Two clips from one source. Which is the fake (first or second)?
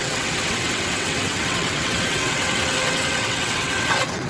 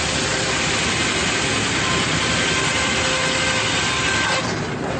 first